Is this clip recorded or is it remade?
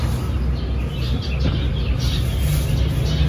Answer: recorded